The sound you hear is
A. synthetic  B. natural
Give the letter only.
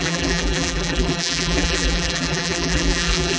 A